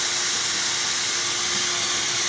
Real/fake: real